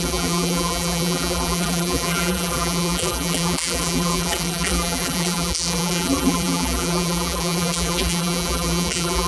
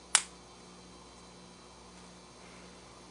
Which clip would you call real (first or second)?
second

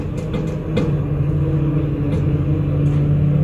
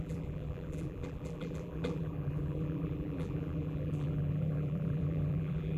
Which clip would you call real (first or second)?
first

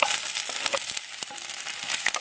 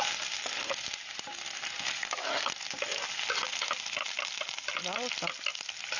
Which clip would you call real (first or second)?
second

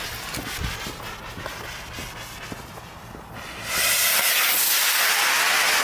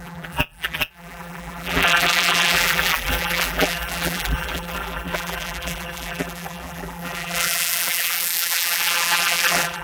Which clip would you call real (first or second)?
first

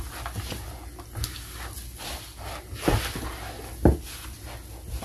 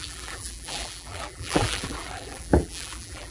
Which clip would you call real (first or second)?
first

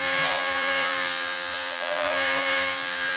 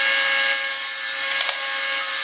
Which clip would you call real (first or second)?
second